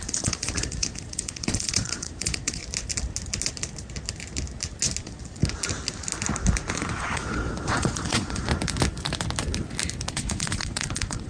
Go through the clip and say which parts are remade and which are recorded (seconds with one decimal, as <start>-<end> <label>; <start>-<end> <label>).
0.0-2.6 remade; 2.6-5.0 recorded; 5.0-5.4 remade; 5.4-6.7 recorded; 6.7-8.5 remade; 8.5-10.1 recorded; 10.1-11.3 remade